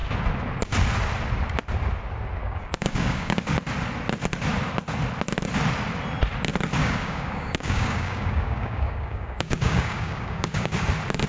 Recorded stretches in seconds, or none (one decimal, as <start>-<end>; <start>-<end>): 0.0-2.4; 3.4-6.8; 10.7-11.3